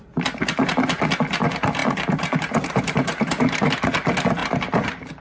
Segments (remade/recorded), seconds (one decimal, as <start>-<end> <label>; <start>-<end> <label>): 0.0-1.8 recorded; 1.8-3.7 remade; 3.7-4.4 recorded; 4.4-5.2 remade